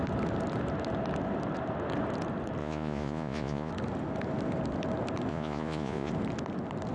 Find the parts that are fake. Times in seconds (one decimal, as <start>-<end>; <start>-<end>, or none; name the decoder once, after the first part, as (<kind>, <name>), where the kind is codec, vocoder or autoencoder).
2.6-3.7 (vocoder, Vocos); 5.3-6.1